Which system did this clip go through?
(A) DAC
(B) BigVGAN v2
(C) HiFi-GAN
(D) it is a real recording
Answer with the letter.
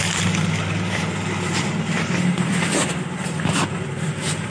B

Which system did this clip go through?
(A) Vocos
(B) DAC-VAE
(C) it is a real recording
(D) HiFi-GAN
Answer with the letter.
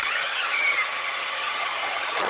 D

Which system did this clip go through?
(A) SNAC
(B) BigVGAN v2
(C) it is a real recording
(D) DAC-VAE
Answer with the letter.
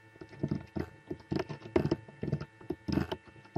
C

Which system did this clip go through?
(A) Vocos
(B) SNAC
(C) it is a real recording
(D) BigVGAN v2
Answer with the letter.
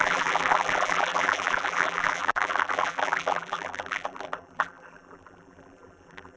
D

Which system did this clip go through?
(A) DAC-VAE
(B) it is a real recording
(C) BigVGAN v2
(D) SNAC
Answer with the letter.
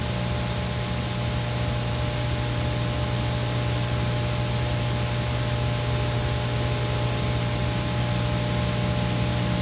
B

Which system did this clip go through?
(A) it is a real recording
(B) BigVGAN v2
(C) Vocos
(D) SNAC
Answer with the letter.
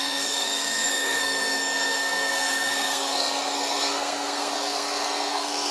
D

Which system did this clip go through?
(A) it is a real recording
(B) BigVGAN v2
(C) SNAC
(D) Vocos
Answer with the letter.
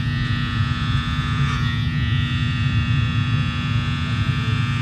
D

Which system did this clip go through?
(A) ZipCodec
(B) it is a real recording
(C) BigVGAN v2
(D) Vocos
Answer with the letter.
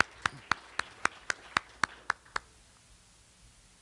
B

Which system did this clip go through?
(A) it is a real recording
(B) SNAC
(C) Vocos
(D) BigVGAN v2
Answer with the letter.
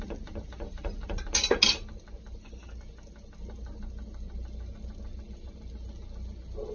A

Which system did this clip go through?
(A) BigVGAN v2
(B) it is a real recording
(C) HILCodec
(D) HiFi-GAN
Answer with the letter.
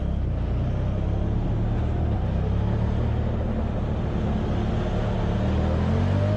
B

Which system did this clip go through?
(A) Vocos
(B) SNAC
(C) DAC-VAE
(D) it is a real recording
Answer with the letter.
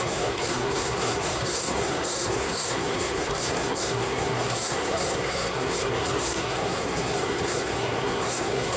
B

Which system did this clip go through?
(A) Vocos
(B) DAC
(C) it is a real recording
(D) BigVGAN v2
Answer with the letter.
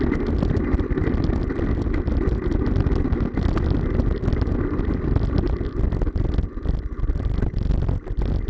D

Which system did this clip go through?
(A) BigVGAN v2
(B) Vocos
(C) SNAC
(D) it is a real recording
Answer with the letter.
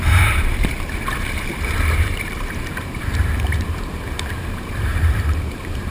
A